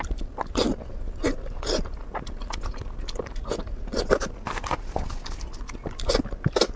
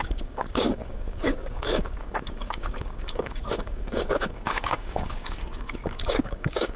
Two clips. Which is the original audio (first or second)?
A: first